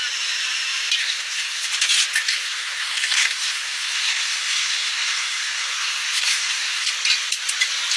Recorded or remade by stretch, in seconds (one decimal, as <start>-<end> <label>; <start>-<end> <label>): 0.0-1.0 recorded; 1.0-1.7 remade; 1.7-2.3 recorded; 2.3-6.9 remade; 6.9-8.0 recorded